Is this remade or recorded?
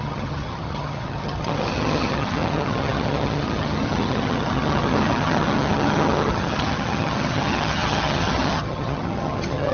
remade